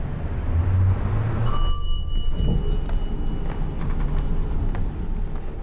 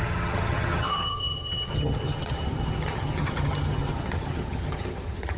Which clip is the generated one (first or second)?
second